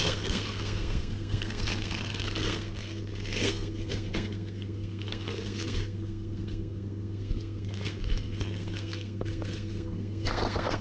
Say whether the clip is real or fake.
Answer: fake